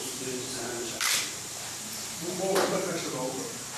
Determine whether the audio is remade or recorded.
remade